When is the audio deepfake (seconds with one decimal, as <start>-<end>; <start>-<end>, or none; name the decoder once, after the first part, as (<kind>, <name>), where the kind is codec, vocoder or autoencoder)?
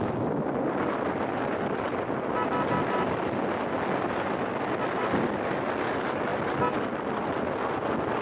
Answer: none